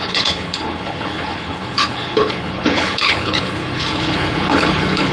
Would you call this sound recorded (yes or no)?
no